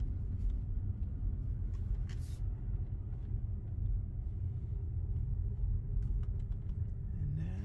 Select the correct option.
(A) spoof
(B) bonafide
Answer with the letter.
B